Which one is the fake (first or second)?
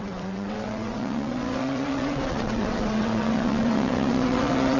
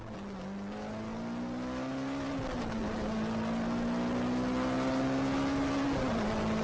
first